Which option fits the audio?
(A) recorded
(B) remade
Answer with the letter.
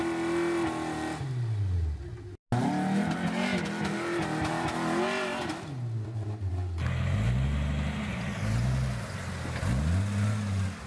A